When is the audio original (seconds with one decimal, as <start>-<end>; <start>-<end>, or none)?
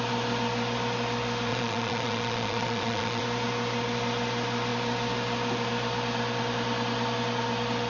0.0-1.5; 3.2-7.9